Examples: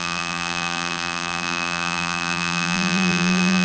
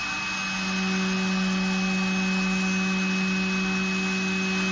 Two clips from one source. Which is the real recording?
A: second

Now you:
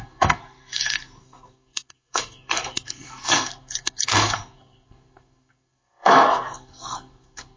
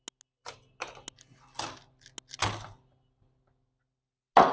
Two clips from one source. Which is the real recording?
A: second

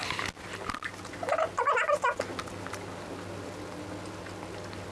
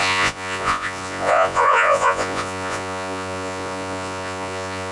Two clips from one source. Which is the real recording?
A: first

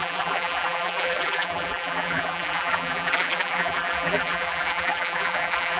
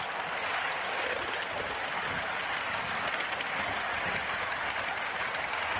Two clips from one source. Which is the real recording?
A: second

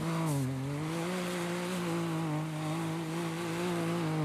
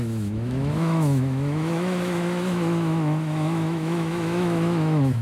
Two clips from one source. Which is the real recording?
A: first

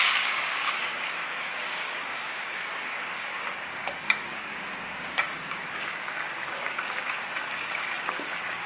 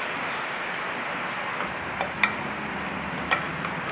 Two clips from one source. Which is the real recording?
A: second